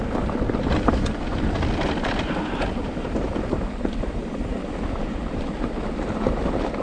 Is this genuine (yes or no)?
yes